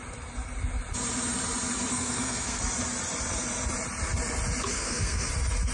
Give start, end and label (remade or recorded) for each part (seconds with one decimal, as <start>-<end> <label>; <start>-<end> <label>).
0.0-1.9 recorded; 1.9-2.6 remade; 2.6-4.7 recorded; 4.7-5.3 remade; 5.3-5.7 recorded